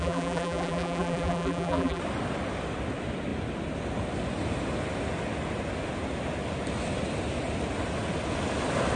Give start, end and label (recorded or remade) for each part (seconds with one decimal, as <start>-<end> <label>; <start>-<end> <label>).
0.0-2.0 remade; 2.0-9.0 recorded